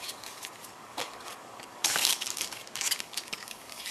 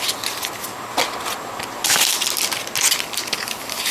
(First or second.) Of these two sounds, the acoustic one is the second